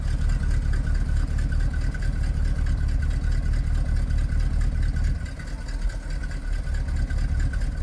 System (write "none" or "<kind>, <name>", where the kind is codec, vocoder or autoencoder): none